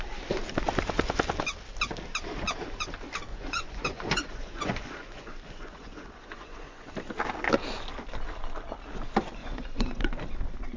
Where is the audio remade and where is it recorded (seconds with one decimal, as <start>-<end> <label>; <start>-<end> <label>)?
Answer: 0.0-3.3 recorded; 3.3-6.9 remade; 6.9-9.4 recorded; 9.4-10.1 remade; 10.1-10.8 recorded